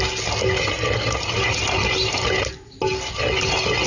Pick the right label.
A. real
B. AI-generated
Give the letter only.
A